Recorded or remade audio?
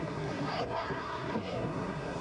remade